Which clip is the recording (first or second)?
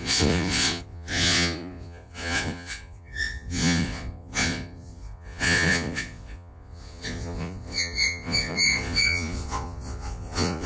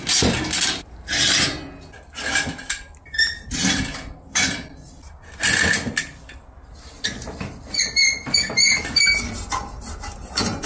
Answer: second